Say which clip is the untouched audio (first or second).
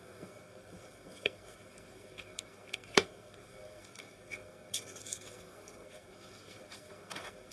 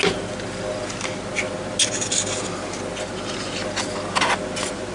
second